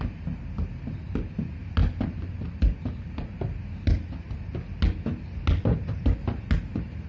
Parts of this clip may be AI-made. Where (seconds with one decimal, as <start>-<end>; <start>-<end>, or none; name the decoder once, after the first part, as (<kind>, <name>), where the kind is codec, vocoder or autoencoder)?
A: none